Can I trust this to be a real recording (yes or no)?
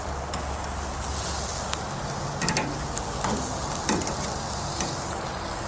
yes